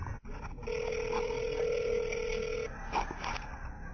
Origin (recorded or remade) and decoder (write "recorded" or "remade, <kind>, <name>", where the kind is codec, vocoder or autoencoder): recorded